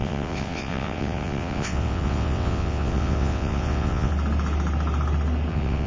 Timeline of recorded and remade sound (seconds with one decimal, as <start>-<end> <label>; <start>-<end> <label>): 0.0-4.1 remade; 4.1-5.5 recorded; 5.5-5.9 remade